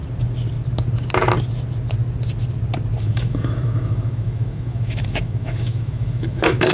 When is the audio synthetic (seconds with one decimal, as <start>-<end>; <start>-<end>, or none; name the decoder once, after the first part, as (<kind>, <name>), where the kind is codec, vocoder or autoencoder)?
3.0-6.7 (autoencoder, DAC-VAE)